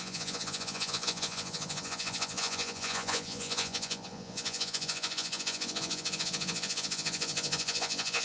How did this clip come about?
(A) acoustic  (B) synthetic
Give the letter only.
B